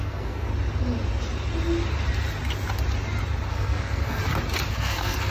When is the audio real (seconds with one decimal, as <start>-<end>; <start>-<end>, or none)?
0.5-3.5; 4.2-4.7

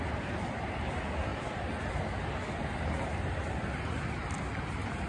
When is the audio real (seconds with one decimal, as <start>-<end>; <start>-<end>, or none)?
0.0-5.1